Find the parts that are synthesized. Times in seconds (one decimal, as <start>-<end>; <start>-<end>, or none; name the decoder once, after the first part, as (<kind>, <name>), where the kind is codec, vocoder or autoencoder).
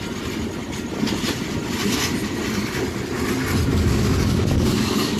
3.7-5.2 (codec, DAC)